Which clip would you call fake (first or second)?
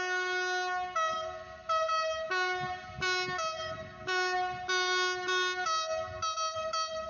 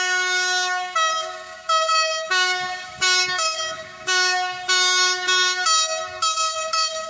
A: second